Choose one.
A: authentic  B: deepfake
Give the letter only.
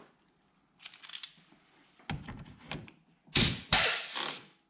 A